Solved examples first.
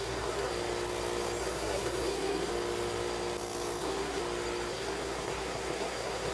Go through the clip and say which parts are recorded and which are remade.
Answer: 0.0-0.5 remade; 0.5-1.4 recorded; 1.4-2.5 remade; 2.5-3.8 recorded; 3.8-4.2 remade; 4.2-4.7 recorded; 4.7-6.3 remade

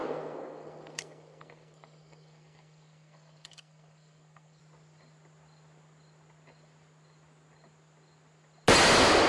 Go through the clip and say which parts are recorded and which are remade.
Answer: 0.0-4.6 remade; 4.6-9.3 recorded